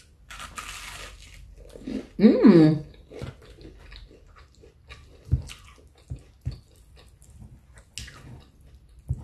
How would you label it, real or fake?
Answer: real